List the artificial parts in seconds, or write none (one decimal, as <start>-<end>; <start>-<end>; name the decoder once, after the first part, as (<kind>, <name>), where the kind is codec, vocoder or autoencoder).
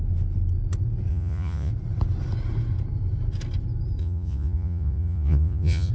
1.1-1.7 (vocoder, Vocos); 4.0-5.9